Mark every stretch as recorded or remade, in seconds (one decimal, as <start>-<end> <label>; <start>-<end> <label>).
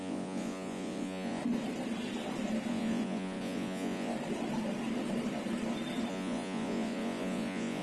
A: 0.0-1.4 remade; 1.4-2.7 recorded; 2.7-4.1 remade; 4.1-6.1 recorded; 6.1-7.8 remade